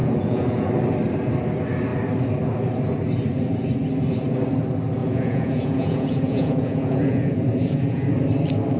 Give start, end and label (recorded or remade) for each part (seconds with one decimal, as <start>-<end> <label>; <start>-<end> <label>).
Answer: 0.0-0.7 remade; 0.7-5.0 recorded; 5.0-8.1 remade; 8.1-8.8 recorded